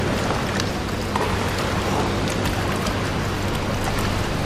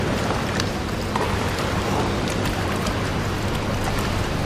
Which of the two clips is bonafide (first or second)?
first